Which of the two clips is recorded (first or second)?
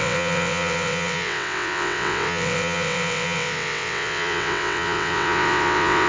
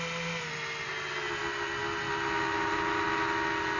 second